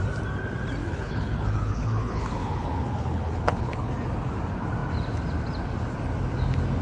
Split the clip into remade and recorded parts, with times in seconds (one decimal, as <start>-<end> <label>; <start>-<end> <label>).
0.0-0.8 recorded; 0.8-3.9 remade; 3.9-6.8 recorded